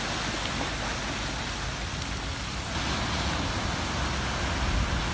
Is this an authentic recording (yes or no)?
yes